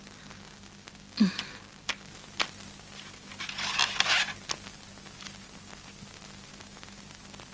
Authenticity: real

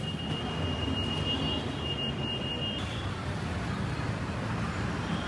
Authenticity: real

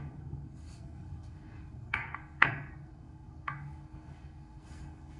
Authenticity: fake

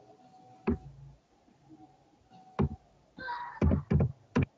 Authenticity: real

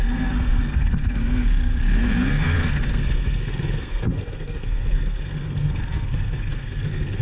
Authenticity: fake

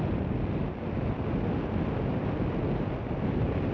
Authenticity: real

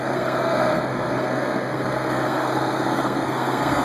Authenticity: fake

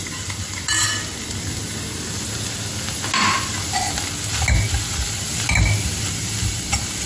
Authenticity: real